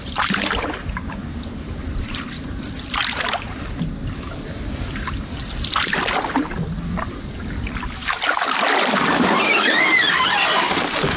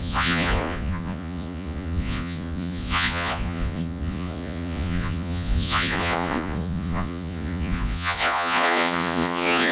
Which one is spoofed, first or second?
second